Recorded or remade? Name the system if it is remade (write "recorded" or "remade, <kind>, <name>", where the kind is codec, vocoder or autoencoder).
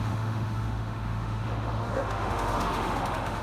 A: remade, autoencoder, DAC-VAE